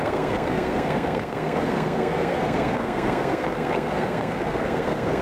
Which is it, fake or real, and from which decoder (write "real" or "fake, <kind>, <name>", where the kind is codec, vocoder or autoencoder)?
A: fake, codec, SNAC